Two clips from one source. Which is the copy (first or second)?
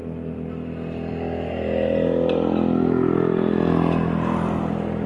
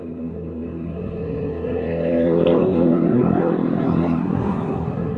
second